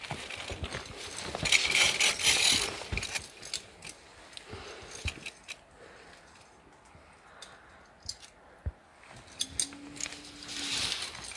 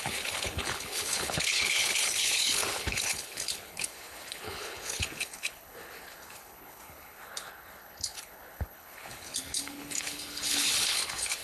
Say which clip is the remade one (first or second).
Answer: second